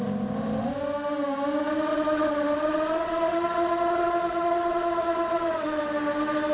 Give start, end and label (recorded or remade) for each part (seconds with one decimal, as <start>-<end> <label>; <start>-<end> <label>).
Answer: 0.0-1.9 recorded; 1.9-5.8 remade; 5.8-6.5 recorded